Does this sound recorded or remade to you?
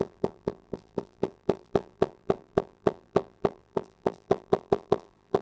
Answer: remade